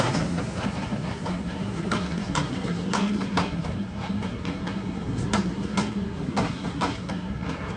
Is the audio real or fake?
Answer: fake